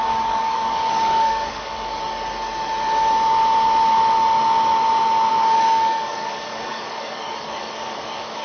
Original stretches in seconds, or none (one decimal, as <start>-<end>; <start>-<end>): 1.9-5.3